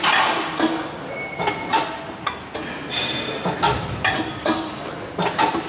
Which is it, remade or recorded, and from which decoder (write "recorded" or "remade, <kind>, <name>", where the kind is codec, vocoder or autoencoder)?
recorded